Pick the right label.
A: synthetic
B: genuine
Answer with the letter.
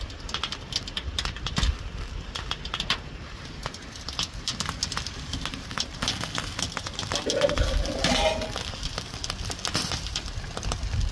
B